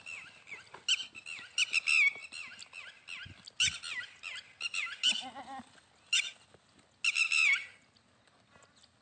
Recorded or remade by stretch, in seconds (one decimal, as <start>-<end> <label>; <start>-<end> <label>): 0.0-9.0 recorded